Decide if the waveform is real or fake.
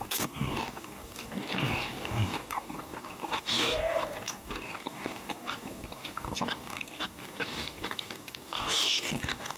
fake